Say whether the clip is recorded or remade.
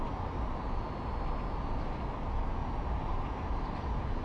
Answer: recorded